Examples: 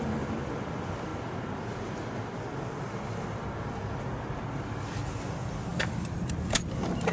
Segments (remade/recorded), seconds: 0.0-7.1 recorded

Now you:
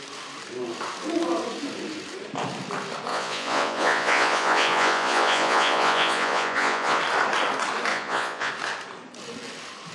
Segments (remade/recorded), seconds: 0.0-3.1 recorded; 3.1-7.0 remade; 7.0-7.9 recorded; 7.9-8.5 remade; 8.5-9.9 recorded

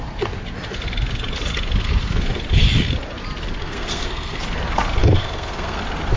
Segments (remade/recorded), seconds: 0.0-3.6 recorded; 3.6-4.4 remade; 4.4-5.0 recorded; 5.0-5.8 remade; 5.8-6.2 recorded

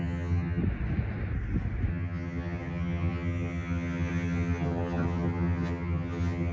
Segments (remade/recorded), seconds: 0.0-0.6 remade; 0.6-1.9 recorded; 1.9-6.5 remade

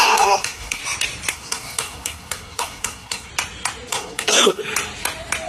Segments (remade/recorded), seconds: 0.0-0.8 remade; 0.8-1.3 recorded; 1.3-3.3 remade; 3.3-3.9 recorded; 3.9-4.6 remade; 4.6-5.5 recorded

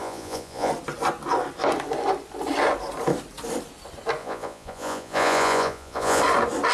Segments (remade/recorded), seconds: 0.0-0.7 remade; 0.7-4.2 recorded; 4.2-6.2 remade; 6.2-6.7 recorded

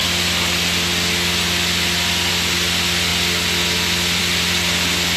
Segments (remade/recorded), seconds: 0.0-5.2 recorded

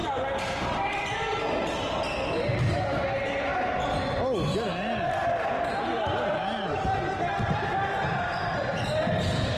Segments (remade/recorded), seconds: 0.0-9.6 recorded